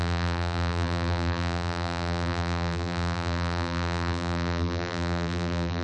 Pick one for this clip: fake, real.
fake